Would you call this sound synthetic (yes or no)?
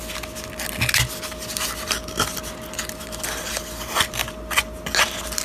no